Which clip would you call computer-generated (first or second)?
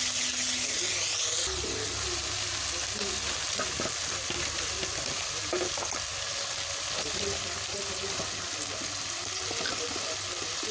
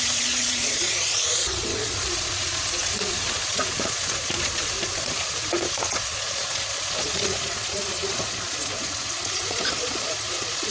second